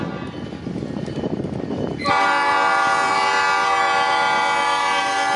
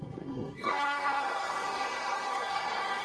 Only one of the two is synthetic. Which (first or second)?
second